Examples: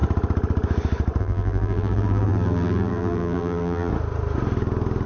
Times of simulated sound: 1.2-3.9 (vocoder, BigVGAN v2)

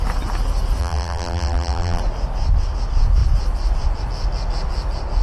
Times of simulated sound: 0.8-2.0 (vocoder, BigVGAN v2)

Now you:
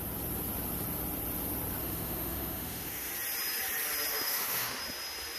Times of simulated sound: 1.8-3.1 (autoencoder, DAC-VAE); 4.1-4.8

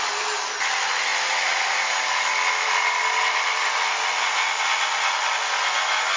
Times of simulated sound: none

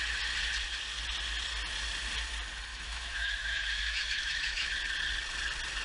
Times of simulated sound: 2.7-4.7 (autoencoder, DAC-VAE)

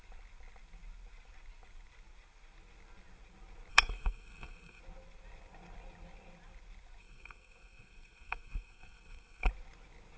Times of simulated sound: 3.7-4.8 (codec, SNAC); 7.0-9.5

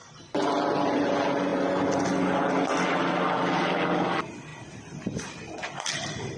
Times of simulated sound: none

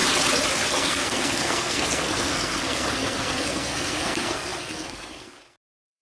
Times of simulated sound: 0.7-6.0 (codec, SNAC)